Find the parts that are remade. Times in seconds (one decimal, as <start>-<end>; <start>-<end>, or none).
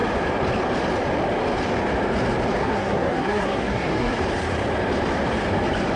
2.6-4.2